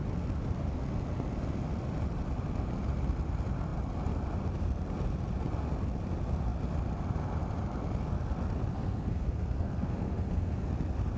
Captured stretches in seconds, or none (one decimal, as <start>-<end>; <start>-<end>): 0.0-8.7; 10.7-11.2